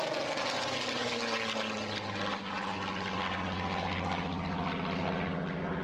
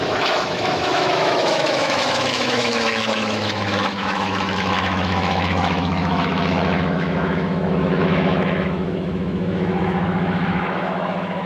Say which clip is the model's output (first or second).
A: second